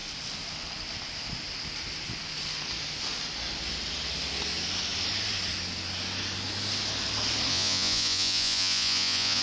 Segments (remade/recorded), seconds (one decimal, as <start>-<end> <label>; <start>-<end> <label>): 0.0-7.5 recorded; 7.5-9.4 remade